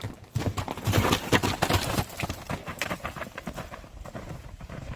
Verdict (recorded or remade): remade